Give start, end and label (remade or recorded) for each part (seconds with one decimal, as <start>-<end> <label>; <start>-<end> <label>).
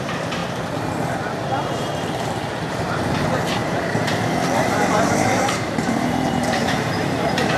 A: 0.0-0.4 remade; 0.4-1.6 recorded; 1.6-7.6 remade